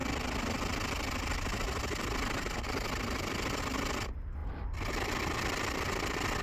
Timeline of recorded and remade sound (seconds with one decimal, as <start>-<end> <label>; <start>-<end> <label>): 0.0-6.4 recorded

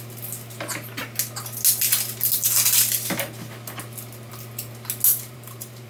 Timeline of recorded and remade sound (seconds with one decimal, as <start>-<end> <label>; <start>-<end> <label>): 0.0-5.1 recorded; 5.1-5.9 remade

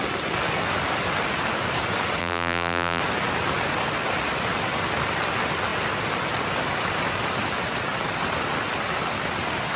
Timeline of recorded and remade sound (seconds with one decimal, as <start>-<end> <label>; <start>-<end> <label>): 0.0-2.2 recorded; 2.2-3.0 remade; 3.0-9.8 recorded

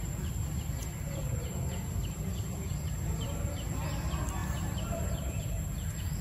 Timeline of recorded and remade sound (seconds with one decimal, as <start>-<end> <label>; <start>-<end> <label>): 0.0-0.8 recorded; 0.8-3.7 remade; 3.7-4.4 recorded; 4.4-5.4 remade; 5.4-6.2 recorded